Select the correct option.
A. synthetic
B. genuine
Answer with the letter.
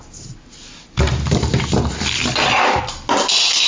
B